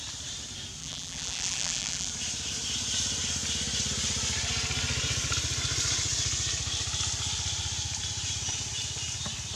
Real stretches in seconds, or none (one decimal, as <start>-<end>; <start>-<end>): 0.0-0.8; 2.1-9.6

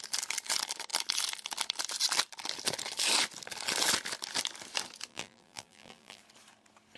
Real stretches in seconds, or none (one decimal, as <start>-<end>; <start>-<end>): 0.0-5.1; 6.2-7.0

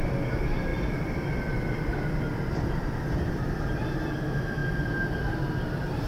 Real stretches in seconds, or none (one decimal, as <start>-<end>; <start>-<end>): 0.0-0.7; 4.1-6.1

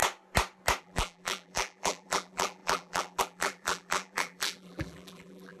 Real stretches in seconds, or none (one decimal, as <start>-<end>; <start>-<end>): 0.0-0.8

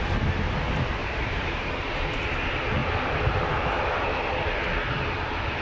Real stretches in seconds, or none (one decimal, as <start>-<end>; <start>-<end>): 0.0-1.0; 2.0-2.8; 4.2-5.6